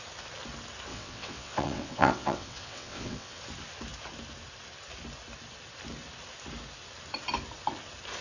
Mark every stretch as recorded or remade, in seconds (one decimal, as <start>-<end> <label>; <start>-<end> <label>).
0.0-0.9 recorded; 0.9-3.4 remade; 3.4-8.2 recorded